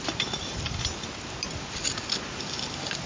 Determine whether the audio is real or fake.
real